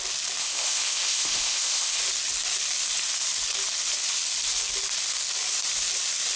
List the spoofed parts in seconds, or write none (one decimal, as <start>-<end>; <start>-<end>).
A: 0.4-2.0